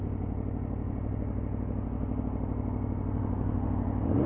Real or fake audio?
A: real